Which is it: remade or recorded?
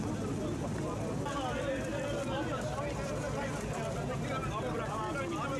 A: recorded